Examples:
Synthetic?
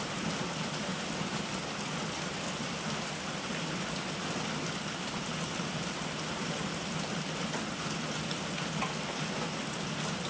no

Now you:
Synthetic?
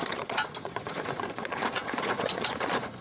yes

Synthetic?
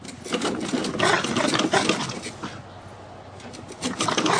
no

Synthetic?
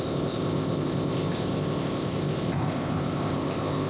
yes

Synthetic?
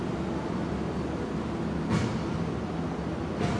no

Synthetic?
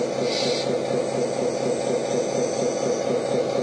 no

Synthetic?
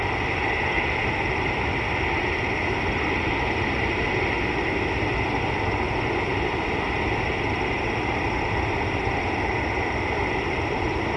no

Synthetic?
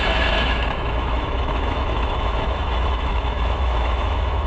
yes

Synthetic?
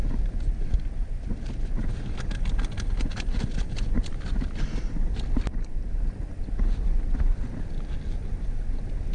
no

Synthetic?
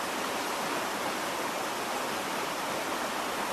no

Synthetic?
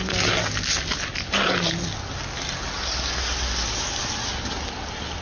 no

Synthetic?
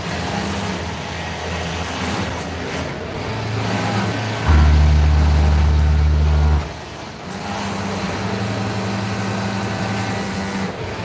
no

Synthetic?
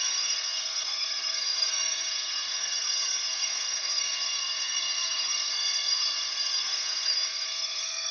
yes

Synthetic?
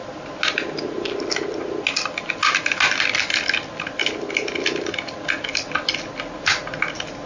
no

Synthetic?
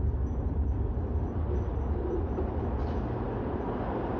no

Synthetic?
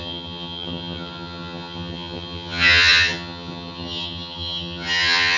yes